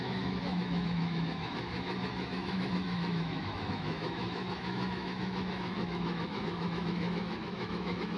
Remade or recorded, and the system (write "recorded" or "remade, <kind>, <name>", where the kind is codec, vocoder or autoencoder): remade, autoencoder, DAC-VAE